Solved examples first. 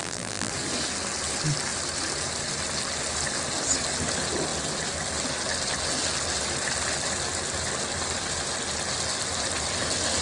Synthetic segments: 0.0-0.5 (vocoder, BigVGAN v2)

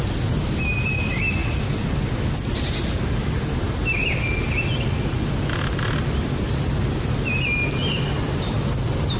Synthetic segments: none

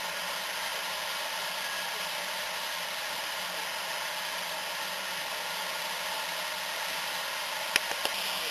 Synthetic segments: 0.7-3.4 (vocoder, BigVGAN v2)

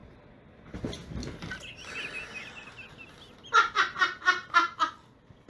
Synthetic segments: none